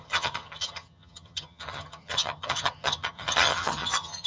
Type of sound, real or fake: fake